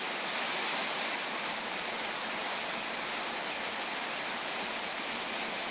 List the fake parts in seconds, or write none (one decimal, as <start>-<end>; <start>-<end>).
none